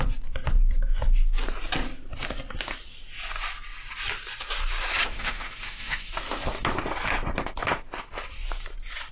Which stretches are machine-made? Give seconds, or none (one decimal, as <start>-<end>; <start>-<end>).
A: 5.1-6.1